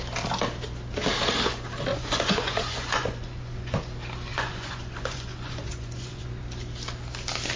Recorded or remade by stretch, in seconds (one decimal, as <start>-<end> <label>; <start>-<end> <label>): 0.0-1.9 recorded; 1.9-3.8 remade; 3.8-4.3 recorded; 4.3-6.4 remade; 6.4-7.6 recorded